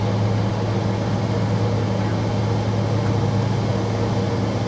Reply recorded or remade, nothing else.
recorded